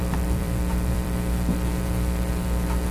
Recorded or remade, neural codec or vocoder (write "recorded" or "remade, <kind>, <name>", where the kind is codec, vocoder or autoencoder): remade, vocoder, BigVGAN v2